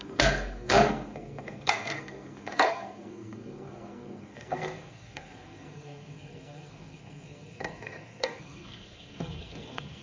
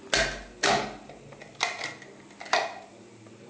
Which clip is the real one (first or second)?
second